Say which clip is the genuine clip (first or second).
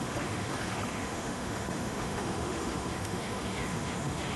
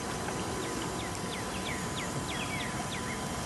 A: second